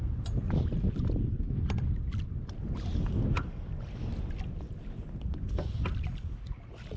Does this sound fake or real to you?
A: real